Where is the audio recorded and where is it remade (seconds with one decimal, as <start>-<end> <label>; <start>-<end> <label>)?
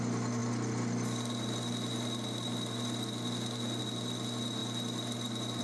0.0-5.6 recorded